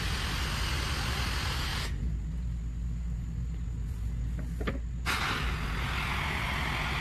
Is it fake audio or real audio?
real